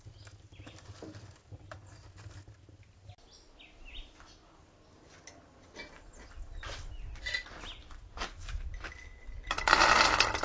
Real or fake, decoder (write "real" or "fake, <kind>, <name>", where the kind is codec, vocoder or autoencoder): real